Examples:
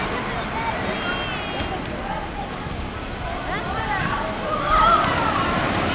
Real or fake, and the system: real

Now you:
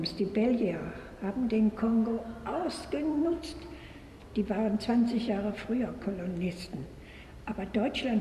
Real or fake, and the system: real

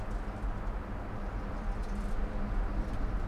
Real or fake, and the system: real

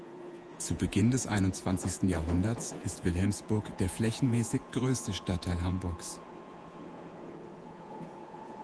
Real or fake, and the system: fake, vocoder, Vocos